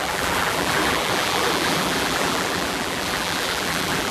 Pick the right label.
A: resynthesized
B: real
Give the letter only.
A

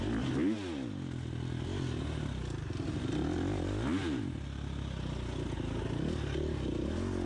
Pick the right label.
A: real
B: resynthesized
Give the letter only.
A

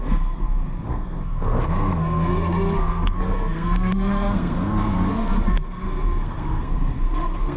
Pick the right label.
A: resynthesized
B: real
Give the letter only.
A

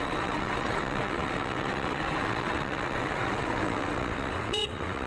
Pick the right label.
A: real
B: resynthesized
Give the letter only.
B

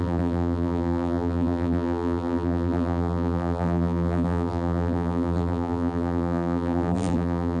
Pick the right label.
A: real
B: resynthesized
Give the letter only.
B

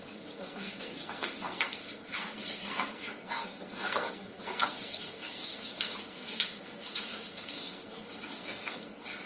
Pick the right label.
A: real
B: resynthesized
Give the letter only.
B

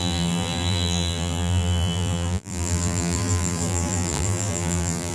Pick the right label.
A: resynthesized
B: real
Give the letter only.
A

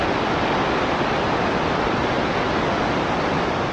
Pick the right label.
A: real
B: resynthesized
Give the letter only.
A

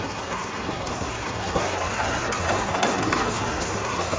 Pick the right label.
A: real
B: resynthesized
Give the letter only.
B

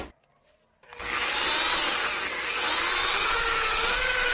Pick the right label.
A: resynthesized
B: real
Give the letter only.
B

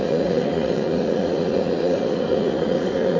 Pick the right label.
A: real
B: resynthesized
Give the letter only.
B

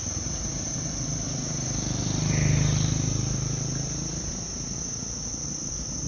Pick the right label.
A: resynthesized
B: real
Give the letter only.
B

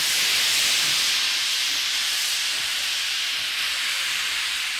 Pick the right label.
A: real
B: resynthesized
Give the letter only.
B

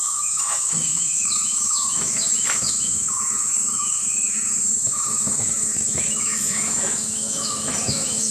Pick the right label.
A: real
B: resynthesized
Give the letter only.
B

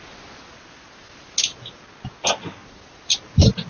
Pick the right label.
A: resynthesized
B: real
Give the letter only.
B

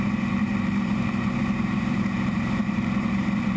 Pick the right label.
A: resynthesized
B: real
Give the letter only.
A